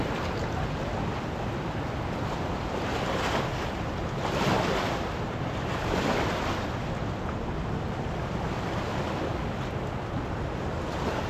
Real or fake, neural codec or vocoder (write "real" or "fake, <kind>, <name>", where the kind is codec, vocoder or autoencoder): real